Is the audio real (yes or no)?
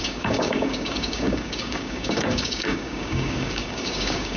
no